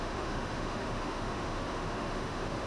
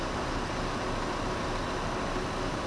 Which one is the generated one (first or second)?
first